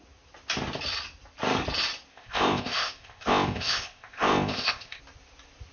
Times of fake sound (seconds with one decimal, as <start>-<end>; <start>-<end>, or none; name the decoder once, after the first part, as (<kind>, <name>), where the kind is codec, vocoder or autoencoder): 2.1-5.0 (codec, ZipCodec)